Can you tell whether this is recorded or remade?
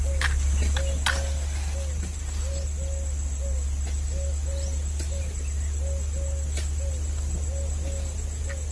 recorded